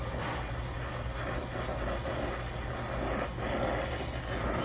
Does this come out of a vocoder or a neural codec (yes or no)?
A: no